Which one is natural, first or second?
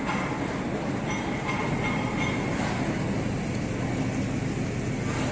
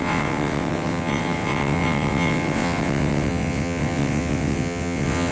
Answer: first